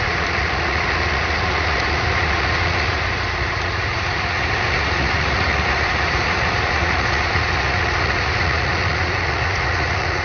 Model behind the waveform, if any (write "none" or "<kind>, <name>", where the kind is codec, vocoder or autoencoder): vocoder, Vocos